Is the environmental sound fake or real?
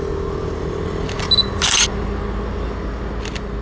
real